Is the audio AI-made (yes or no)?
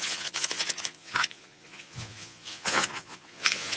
yes